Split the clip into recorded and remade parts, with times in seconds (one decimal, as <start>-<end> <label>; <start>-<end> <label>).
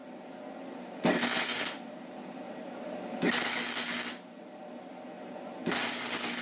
0.0-6.4 recorded